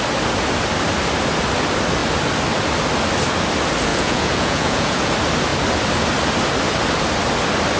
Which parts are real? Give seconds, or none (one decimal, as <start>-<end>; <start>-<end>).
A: 0.0-3.9; 5.1-7.8